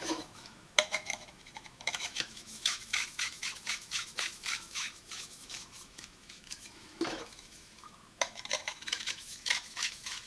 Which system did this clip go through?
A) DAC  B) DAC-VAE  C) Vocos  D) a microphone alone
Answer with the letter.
B